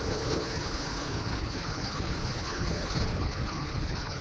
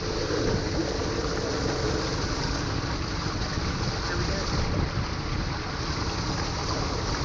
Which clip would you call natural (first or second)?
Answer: second